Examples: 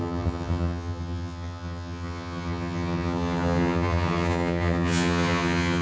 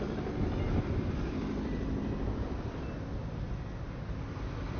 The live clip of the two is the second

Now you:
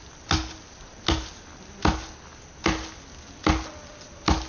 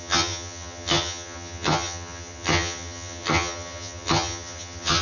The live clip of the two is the first